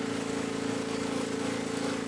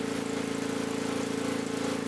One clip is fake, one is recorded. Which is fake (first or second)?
first